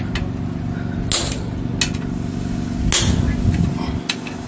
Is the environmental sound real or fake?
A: real